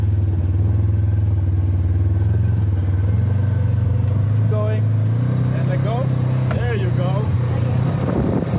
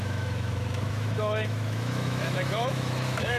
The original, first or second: first